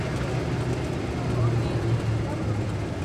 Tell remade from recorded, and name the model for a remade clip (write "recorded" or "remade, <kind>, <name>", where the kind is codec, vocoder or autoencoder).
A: recorded